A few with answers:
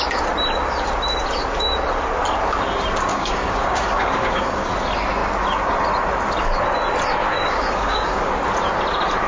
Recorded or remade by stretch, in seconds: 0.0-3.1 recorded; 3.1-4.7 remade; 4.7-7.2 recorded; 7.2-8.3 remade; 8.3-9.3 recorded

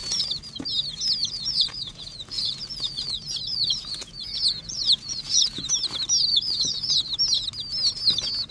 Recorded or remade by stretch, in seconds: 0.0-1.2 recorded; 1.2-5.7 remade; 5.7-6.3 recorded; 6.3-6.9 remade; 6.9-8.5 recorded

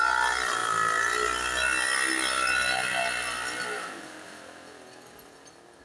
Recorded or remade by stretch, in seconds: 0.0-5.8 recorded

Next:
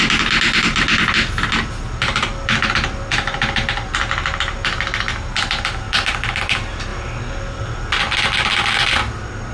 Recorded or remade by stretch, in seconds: 0.0-9.5 recorded